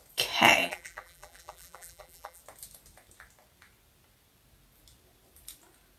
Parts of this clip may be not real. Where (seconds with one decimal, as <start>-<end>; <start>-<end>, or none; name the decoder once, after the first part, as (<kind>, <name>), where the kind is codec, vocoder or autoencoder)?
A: 0.6-2.4 (vocoder, BigVGAN v2)